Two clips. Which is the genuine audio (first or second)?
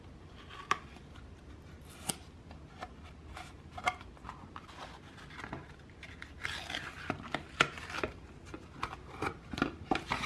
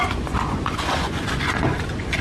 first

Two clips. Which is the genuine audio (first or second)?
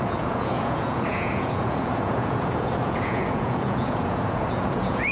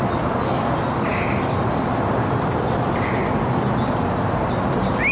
second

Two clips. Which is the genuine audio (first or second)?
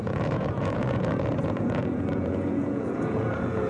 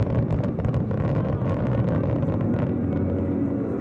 second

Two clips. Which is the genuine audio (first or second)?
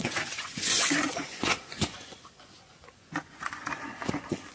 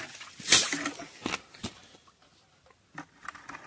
second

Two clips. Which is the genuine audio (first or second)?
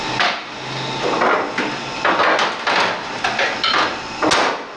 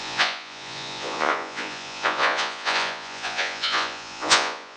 first